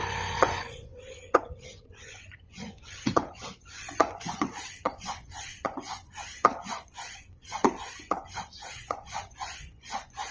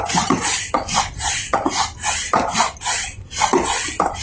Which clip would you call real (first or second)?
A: second